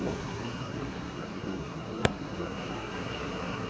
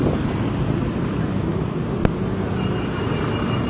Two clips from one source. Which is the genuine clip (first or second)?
second